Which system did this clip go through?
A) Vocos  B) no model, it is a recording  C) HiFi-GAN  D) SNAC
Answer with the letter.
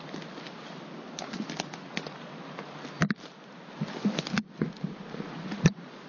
B